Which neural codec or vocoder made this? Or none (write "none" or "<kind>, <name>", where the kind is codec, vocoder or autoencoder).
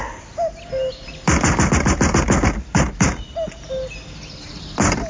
none